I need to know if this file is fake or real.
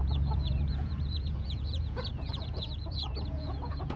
fake